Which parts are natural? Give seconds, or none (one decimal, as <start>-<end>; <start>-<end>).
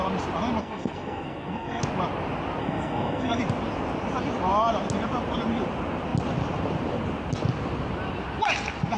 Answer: 0.0-0.6; 1.8-2.6; 3.4-9.0